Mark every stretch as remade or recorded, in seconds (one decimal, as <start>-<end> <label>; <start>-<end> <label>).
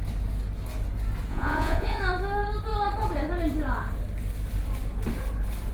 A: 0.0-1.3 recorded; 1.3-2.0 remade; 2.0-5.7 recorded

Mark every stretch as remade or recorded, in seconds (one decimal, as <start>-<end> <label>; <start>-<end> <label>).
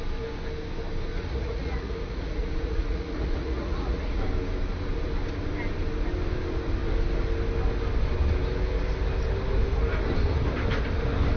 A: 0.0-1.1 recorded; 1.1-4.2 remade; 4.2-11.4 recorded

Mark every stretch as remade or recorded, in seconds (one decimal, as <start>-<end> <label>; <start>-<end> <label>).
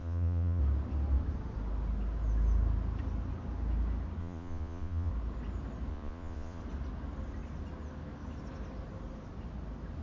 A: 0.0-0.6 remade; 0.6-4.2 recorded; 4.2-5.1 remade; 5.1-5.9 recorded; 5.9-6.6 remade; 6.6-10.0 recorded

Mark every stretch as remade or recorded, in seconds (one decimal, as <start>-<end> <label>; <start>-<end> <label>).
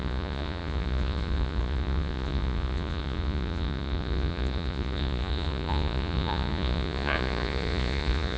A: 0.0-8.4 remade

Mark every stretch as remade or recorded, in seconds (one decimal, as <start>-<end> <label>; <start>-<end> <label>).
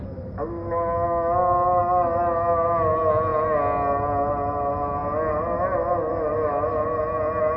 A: 0.0-7.6 recorded